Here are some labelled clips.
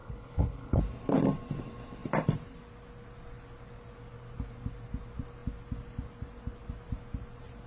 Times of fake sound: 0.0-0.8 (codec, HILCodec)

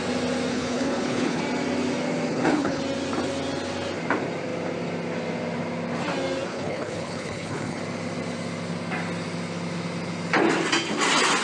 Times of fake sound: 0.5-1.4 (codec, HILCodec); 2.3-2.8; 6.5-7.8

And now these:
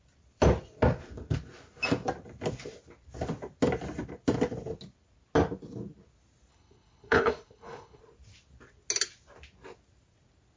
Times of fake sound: 6.5-8.0 (codec, HILCodec)

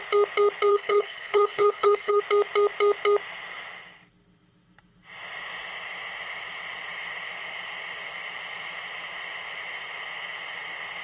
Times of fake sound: 0.7-2.2 (codec, HILCodec)

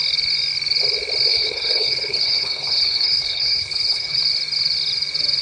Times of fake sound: 1.3-4.2 (codec, HILCodec)

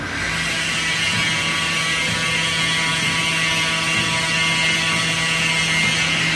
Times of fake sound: none

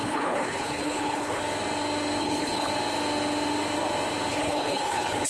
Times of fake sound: 0.0-1.4 (codec, HILCodec); 2.2-2.7; 4.3-5.3